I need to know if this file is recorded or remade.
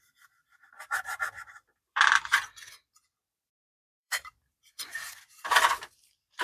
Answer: remade